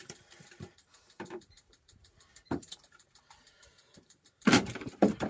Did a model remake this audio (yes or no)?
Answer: yes